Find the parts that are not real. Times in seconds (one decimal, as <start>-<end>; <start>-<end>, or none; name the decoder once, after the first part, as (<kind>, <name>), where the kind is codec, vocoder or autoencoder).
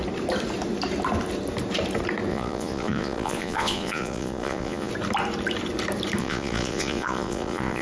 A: 2.3-4.9 (vocoder, Vocos); 6.2-7.8